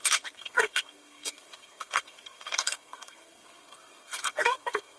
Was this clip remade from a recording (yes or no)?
yes